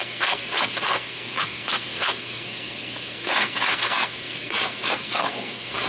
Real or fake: fake